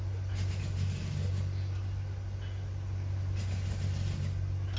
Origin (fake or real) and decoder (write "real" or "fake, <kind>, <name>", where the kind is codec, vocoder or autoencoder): real